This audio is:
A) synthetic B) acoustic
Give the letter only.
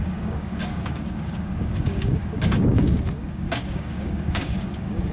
A